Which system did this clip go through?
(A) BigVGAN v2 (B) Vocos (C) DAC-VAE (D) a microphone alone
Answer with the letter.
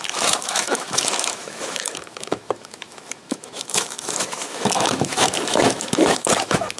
C